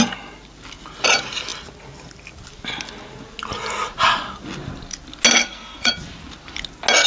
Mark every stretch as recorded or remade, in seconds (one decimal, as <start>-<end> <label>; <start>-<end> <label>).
0.0-5.4 recorded; 5.4-5.9 remade; 5.9-7.1 recorded